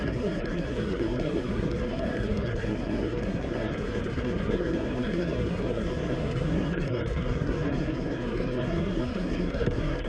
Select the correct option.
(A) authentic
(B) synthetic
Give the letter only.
B